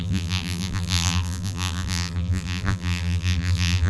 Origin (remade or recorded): remade